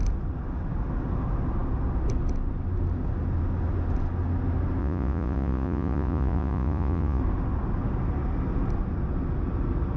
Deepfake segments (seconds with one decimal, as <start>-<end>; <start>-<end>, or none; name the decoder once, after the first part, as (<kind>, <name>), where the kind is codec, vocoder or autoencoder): 4.8-7.2 (vocoder, Vocos)